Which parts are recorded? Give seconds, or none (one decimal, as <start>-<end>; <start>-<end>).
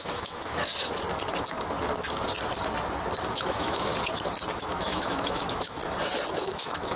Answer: 0.7-3.3; 3.9-4.6; 5.8-6.3